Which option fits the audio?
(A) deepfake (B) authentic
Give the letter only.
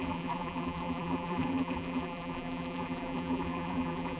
A